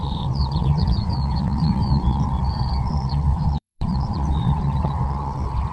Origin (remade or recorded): remade